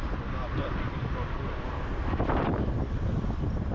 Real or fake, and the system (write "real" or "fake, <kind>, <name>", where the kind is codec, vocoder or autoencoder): fake, vocoder, BigVGAN v2